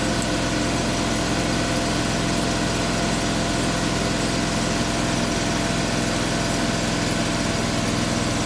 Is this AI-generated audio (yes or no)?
no